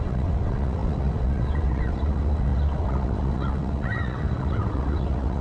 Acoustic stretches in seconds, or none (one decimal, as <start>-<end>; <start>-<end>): none